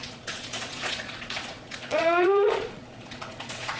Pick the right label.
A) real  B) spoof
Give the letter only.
B